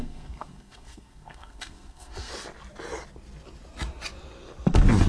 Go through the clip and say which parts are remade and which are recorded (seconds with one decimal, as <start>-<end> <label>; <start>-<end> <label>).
0.0-2.3 remade; 2.3-5.1 recorded